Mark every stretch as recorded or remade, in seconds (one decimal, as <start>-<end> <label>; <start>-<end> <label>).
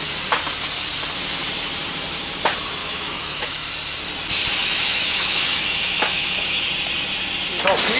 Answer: 0.0-2.8 recorded; 2.8-3.7 remade; 3.7-4.6 recorded; 4.6-6.7 remade; 6.7-8.0 recorded